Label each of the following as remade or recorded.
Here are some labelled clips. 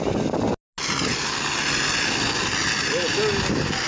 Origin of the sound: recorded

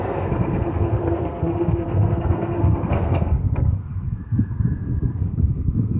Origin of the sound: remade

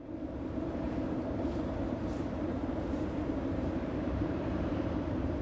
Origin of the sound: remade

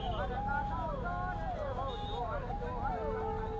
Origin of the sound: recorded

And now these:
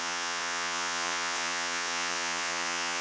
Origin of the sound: remade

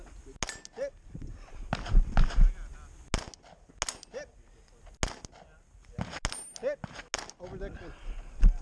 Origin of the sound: recorded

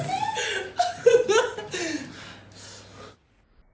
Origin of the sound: recorded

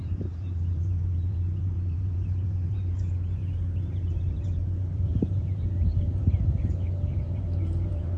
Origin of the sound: remade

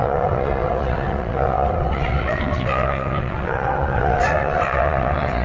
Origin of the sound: remade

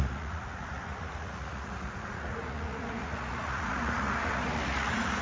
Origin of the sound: remade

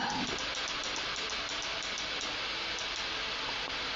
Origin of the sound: recorded